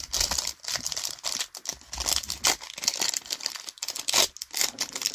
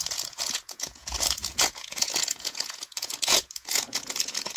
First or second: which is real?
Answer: first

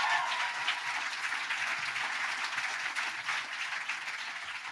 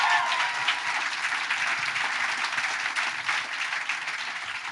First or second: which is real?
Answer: second